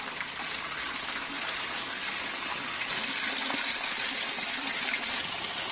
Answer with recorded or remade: recorded